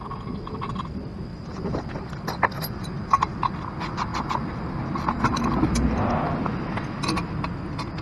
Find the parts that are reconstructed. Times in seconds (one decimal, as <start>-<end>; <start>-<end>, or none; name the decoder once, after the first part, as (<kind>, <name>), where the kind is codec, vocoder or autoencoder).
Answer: 1.3-2.0 (vocoder, BigVGAN v2); 4.1-8.0